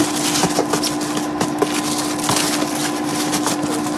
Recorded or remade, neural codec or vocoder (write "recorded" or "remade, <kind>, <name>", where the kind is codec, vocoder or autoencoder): recorded